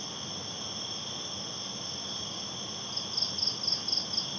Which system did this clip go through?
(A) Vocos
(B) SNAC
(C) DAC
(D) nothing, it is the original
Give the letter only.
D